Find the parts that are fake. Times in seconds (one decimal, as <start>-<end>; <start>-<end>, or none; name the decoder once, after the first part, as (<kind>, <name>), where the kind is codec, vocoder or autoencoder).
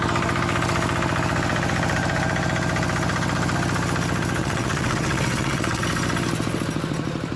4.4-5.8 (vocoder, WaveNeXt)